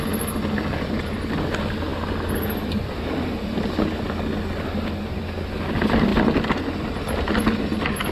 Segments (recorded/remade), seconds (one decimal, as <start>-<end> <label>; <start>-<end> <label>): 0.0-8.1 recorded